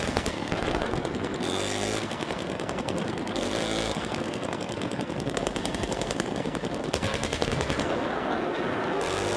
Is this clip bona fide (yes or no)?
no